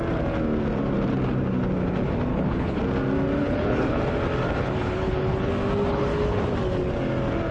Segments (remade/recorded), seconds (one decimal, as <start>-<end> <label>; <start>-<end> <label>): 0.0-2.3 recorded; 2.3-2.8 remade; 2.8-3.4 recorded; 3.4-4.0 remade; 4.0-4.6 recorded; 4.6-5.5 remade; 5.5-5.9 recorded; 5.9-6.4 remade; 6.4-7.5 recorded